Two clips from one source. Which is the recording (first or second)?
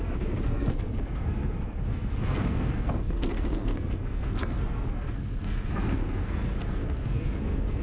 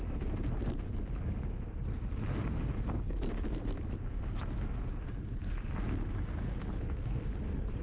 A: second